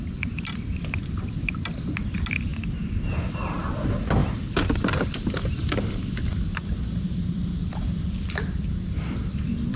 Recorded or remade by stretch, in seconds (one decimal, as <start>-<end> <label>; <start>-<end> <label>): 0.0-9.8 recorded